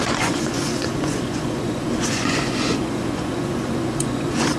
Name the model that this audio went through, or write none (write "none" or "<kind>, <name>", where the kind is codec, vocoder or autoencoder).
vocoder, Vocos